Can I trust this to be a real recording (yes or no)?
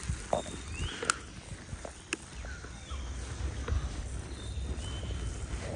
yes